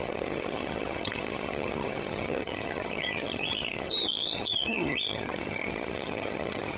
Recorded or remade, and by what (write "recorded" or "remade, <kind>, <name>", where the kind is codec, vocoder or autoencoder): remade, vocoder, HiFi-GAN